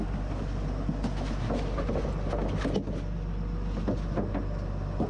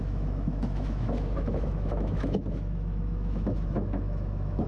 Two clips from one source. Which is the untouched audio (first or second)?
first